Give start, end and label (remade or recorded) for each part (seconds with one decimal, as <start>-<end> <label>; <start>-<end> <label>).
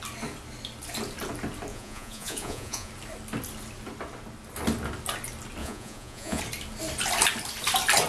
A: 0.0-1.7 recorded; 1.7-2.9 remade; 2.9-5.6 recorded; 5.6-6.4 remade; 6.4-8.1 recorded